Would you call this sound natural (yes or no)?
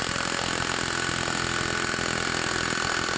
yes